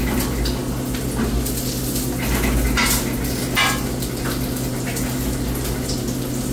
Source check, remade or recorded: recorded